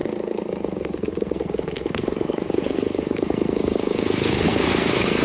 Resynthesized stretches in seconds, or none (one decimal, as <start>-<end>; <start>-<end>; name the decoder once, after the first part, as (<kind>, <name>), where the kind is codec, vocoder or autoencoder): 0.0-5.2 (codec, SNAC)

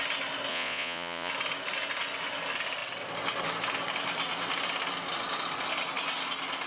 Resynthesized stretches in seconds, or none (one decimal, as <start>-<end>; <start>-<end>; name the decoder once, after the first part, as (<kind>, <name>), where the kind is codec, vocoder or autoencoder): 0.5-1.3 (vocoder, Vocos)

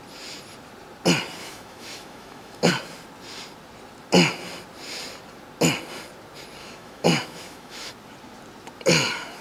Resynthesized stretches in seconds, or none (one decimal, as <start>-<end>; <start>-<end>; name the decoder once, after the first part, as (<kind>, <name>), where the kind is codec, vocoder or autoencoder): 1.4-2.7 (autoencoder, DAC-VAE); 6.6-7.9